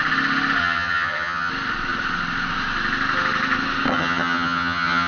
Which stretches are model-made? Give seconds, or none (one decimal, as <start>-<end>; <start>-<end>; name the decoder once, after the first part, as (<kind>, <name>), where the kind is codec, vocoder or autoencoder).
0.6-1.5 (vocoder, HiFi-GAN); 3.9-5.1